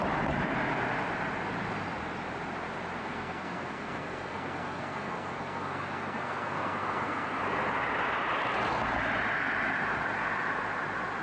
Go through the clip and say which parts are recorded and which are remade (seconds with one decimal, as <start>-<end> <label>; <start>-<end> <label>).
0.0-3.0 recorded; 3.0-7.4 remade; 7.4-11.2 recorded